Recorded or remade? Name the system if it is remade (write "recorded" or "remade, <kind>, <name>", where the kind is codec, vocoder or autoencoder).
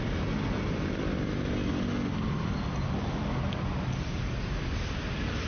recorded